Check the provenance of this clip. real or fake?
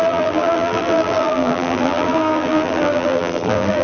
fake